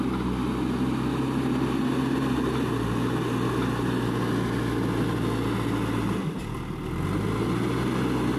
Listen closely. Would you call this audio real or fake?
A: real